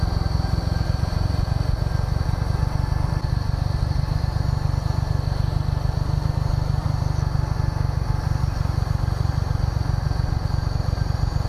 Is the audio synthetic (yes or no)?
no